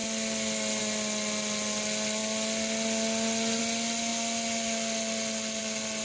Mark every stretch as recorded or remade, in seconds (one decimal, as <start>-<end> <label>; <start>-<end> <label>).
0.0-6.0 recorded